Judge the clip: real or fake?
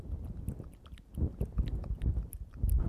real